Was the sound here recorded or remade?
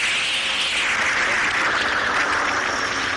recorded